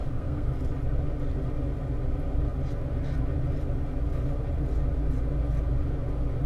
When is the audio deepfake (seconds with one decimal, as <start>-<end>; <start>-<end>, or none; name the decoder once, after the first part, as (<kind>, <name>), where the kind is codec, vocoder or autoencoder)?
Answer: 0.0-0.5 (codec, SNAC)